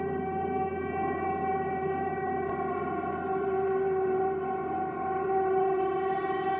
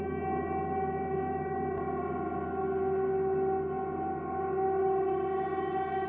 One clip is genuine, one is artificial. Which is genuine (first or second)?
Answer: second